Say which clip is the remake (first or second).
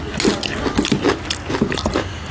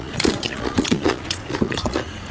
second